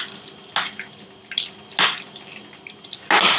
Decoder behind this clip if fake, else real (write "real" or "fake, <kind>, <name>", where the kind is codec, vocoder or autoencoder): real